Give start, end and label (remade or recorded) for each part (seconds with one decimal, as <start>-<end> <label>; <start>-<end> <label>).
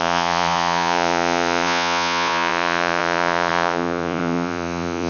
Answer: 0.0-5.1 remade